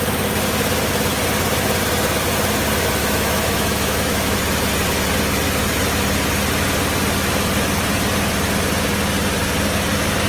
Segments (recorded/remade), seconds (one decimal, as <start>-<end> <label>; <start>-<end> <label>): 0.0-3.0 recorded; 3.0-4.4 remade; 4.4-10.3 recorded